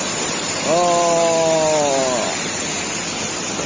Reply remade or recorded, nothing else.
recorded